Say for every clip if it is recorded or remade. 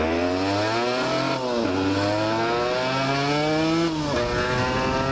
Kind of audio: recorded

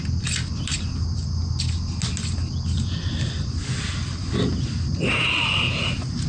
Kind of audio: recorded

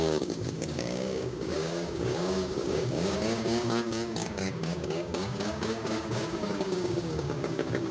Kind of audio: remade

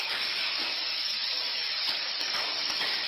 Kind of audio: remade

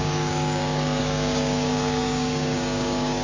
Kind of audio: remade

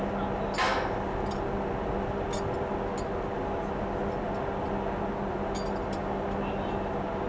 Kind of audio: recorded